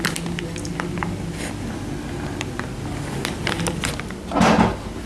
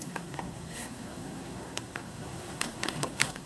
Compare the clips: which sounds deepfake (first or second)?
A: second